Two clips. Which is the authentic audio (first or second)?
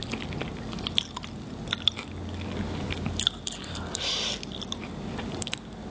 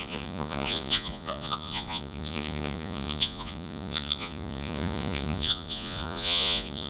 first